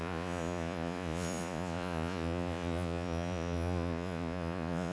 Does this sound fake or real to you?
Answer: fake